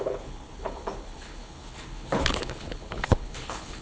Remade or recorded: remade